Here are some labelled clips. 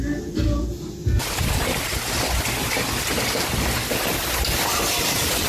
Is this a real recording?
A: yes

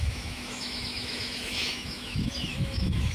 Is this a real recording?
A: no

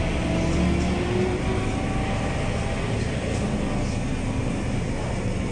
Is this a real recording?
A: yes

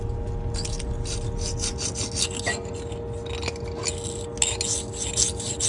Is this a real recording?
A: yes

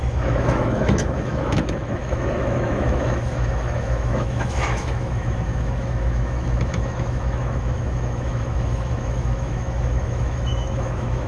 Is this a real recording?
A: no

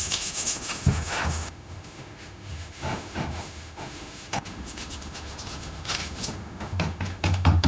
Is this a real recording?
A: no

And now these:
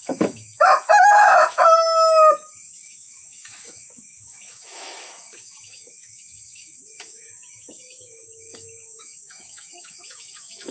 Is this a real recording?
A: no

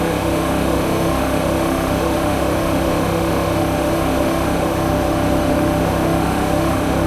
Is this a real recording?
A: no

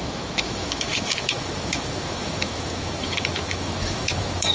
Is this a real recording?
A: no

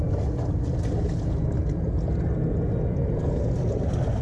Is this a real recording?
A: yes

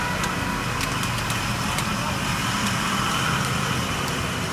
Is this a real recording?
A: yes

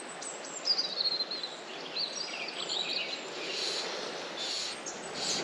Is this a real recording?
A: yes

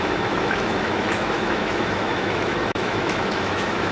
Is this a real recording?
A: no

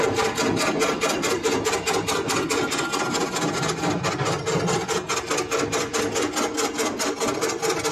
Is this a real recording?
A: yes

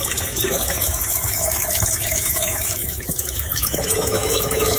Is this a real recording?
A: no